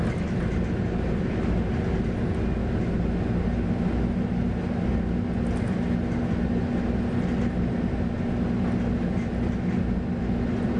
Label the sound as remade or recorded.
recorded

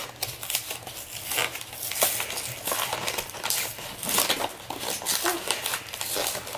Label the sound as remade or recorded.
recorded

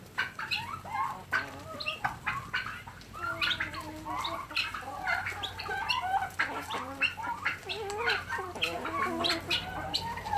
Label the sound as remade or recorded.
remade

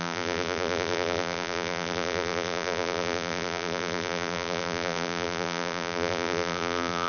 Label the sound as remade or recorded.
remade